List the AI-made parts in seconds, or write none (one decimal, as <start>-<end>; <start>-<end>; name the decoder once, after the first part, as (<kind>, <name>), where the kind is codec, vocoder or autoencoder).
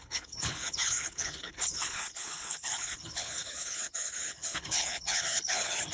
0.0-5.9 (codec, HILCodec)